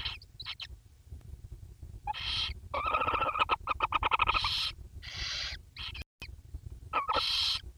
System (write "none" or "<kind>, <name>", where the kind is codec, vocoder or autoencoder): none